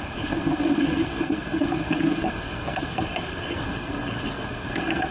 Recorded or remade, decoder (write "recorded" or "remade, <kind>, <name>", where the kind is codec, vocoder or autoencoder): remade, codec, SNAC